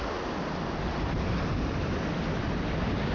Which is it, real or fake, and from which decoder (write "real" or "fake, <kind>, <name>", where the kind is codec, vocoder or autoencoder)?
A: real